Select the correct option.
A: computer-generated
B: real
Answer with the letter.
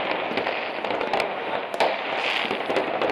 B